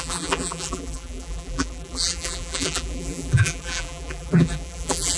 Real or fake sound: fake